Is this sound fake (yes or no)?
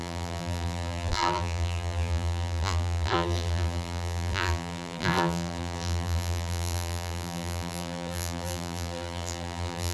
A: yes